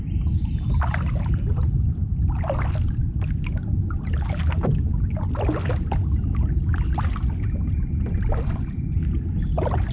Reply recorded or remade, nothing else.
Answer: recorded